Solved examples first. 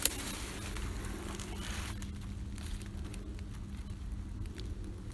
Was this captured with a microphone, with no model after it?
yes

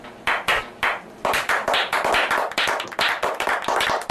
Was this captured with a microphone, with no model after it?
yes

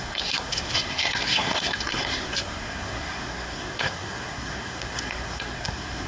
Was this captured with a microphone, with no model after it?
no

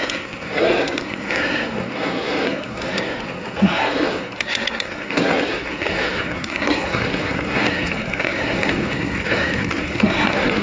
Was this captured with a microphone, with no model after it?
no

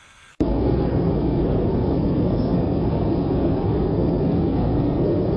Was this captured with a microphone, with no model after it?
no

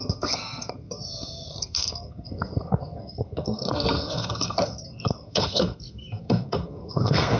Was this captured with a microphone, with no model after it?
no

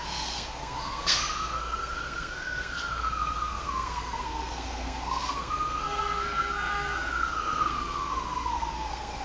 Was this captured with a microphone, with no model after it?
no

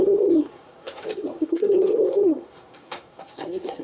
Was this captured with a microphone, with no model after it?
no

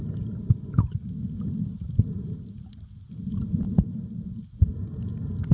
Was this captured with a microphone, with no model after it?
yes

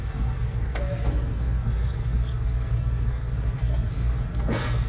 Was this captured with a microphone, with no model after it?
no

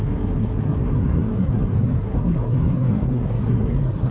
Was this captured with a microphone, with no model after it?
no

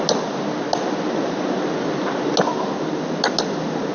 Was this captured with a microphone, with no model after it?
yes